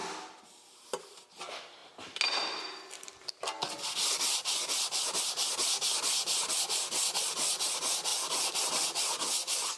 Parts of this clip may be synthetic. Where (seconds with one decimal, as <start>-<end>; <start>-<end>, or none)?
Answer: 0.0-1.3